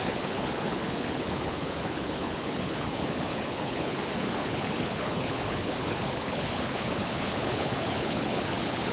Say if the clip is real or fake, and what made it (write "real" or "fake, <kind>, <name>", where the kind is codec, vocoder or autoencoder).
fake, codec, HILCodec